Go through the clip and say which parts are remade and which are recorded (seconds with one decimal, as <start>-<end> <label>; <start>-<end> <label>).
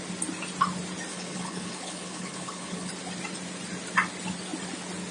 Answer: 0.0-1.1 recorded; 1.1-2.9 remade; 2.9-5.1 recorded